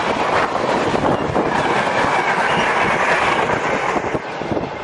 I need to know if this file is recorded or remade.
recorded